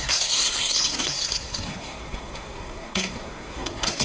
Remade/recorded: remade